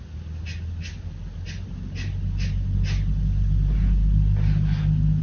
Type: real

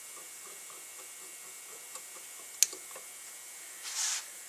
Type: real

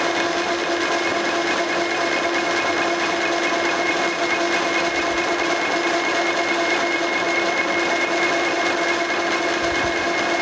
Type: real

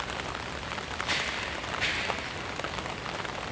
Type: real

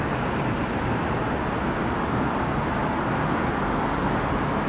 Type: real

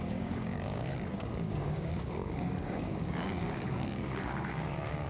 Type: fake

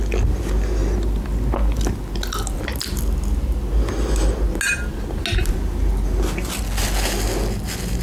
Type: real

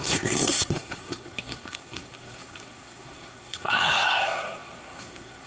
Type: fake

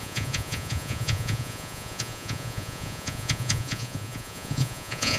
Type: fake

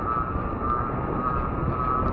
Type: real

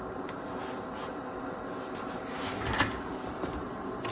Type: real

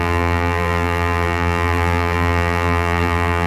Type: fake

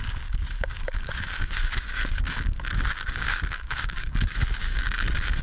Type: fake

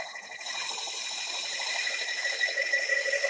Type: real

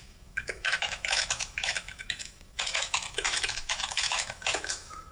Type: fake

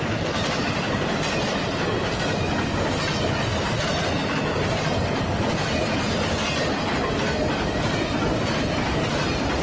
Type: real